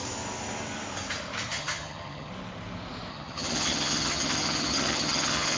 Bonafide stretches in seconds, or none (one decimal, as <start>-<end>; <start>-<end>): 0.0-1.5; 2.3-3.1